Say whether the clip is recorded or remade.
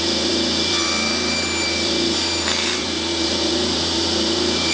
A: remade